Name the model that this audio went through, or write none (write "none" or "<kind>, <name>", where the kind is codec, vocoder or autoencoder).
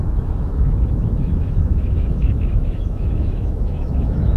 autoencoder, DAC-VAE